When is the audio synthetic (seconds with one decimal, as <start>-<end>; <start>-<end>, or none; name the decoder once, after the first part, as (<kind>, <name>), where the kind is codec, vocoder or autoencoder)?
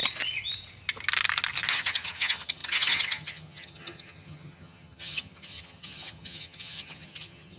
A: 1.7-7.6 (vocoder, HiFi-GAN)